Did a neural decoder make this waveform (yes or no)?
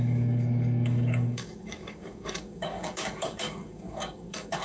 yes